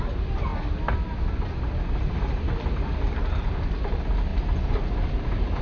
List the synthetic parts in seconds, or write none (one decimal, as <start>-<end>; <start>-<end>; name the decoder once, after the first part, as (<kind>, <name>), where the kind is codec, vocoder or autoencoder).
none